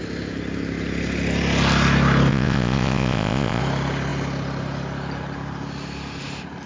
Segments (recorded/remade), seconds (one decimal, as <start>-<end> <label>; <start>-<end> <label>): 0.0-2.3 recorded; 2.3-3.6 remade; 3.6-6.7 recorded